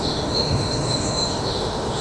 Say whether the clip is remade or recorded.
remade